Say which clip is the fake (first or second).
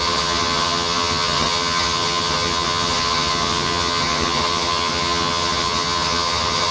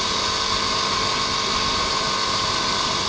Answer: first